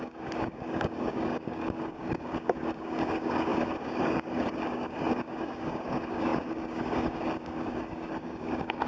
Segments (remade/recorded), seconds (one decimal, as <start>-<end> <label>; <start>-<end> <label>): 0.0-8.9 remade